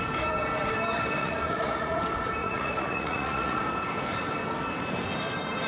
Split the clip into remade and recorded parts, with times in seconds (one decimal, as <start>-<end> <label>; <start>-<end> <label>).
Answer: 0.0-1.2 recorded; 1.2-2.0 remade; 2.0-2.4 recorded; 2.4-3.6 remade; 3.6-5.7 recorded